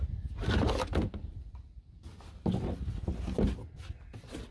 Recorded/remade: recorded